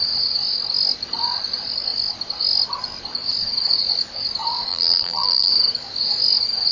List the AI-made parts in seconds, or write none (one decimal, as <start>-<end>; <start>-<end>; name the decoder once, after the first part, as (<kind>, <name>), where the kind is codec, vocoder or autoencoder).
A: 4.7-5.5 (vocoder, BigVGAN v2)